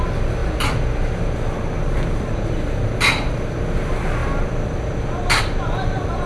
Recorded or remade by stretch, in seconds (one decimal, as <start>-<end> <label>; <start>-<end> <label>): 0.0-6.3 recorded